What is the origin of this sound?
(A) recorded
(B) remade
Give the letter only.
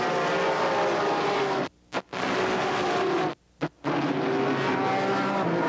A